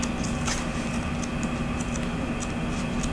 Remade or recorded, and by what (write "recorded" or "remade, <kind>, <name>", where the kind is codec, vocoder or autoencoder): recorded